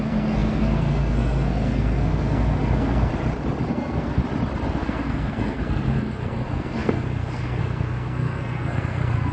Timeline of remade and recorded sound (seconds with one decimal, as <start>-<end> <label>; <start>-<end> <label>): 0.0-3.1 remade; 3.1-3.7 recorded; 3.7-4.2 remade; 4.2-4.7 recorded; 4.7-9.3 remade